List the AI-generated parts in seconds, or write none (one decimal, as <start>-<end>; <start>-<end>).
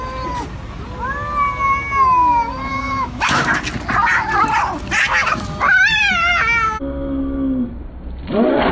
2.7-3.4